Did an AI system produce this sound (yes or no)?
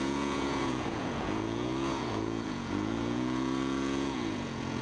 yes